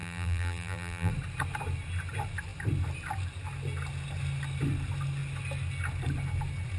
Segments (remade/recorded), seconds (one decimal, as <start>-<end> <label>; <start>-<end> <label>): 0.0-1.1 remade; 1.1-6.8 recorded